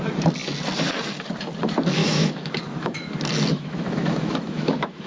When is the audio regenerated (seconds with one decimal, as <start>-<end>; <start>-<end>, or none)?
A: 2.0-3.1; 3.5-5.1